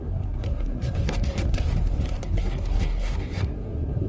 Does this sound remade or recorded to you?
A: remade